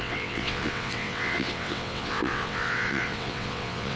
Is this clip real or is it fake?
fake